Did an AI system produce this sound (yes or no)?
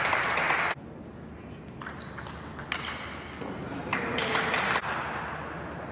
no